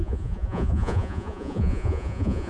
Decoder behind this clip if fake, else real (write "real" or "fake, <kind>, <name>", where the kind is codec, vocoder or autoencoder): fake, vocoder, Vocos